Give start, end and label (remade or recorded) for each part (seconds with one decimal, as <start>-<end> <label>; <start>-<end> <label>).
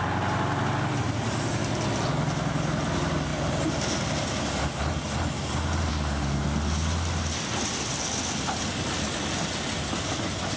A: 0.0-10.6 recorded